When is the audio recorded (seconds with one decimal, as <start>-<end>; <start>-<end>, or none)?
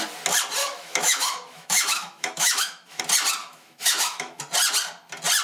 0.0-0.6; 3.0-3.4; 4.4-5.4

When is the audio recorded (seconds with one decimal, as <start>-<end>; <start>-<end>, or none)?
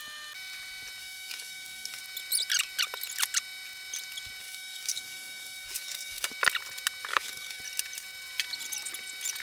0.0-1.0; 2.0-4.4; 6.3-7.1; 7.6-9.4